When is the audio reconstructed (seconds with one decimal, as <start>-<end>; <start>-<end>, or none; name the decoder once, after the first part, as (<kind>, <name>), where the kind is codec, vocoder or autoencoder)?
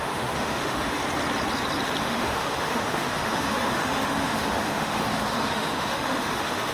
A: 0.0-1.0 (autoencoder, DAC-VAE); 2.0-6.7